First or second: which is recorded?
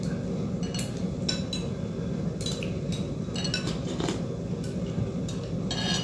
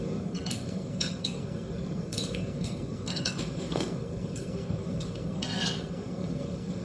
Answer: first